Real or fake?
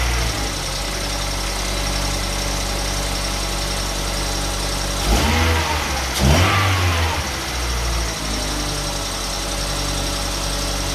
real